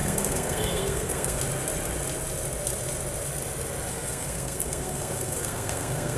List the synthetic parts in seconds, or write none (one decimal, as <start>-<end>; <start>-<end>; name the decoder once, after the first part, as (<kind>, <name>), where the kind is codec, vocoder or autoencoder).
0.0-1.4 (codec, SNAC); 3.9-6.2